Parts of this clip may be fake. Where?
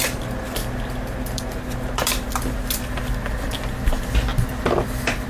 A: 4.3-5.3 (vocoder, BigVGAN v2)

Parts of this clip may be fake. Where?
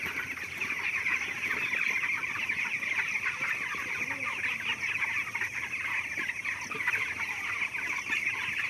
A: none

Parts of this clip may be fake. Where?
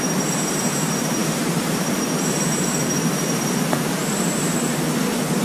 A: 0.0-4.0 (vocoder, BigVGAN v2)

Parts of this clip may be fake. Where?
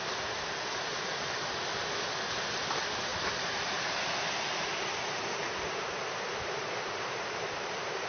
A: 0.9-1.5 (vocoder, BigVGAN v2); 3.1-8.1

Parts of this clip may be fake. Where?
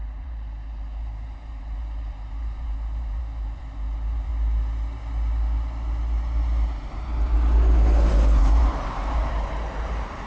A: 0.0-4.3 (vocoder, BigVGAN v2); 8.4-10.3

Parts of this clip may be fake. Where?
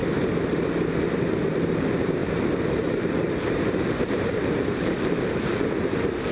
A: 1.2-6.3 (vocoder, BigVGAN v2)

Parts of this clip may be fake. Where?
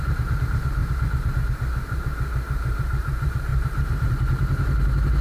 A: 0.0-5.2 (vocoder, BigVGAN v2)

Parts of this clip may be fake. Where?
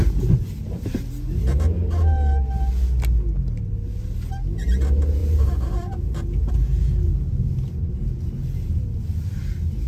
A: 5.2-6.5 (vocoder, BigVGAN v2); 7.9-8.7